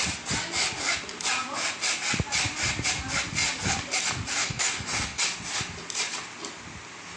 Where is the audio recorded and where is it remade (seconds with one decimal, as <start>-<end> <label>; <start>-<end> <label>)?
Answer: 0.0-4.4 recorded; 4.4-5.2 remade; 5.2-7.2 recorded